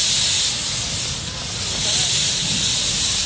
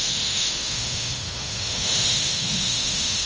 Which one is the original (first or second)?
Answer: first